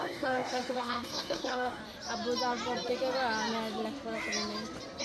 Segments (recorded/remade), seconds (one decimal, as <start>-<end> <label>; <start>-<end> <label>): 0.0-1.8 remade; 1.8-5.0 recorded